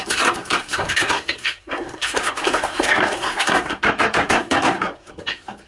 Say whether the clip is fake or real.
fake